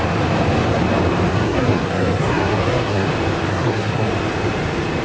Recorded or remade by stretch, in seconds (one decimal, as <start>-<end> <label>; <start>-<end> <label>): 0.0-1.3 recorded; 1.3-3.1 remade; 3.1-3.5 recorded; 3.5-4.1 remade; 4.1-5.0 recorded